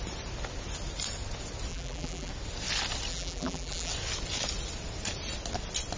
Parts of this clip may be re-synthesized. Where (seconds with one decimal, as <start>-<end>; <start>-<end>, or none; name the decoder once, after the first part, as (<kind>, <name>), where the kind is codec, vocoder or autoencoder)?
1.7-2.3 (vocoder, BigVGAN v2); 3.1-3.9